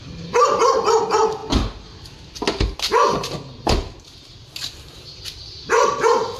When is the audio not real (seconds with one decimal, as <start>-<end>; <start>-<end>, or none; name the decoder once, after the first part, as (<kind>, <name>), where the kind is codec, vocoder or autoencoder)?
none